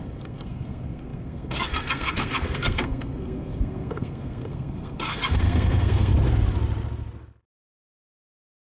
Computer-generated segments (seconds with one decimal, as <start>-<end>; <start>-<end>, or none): 0.0-6.1